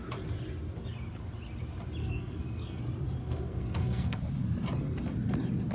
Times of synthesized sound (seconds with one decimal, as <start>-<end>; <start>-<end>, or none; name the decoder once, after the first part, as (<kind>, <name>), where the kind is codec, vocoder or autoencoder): 2.0-2.8 (codec, SNAC); 3.2-4.2